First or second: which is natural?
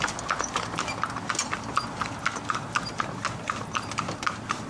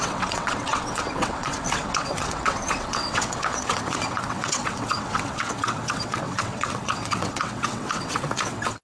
first